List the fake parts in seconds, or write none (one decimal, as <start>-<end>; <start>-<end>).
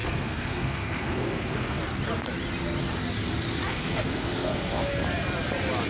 0.0-1.8; 3.7-4.9